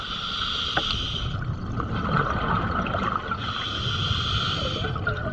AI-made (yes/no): no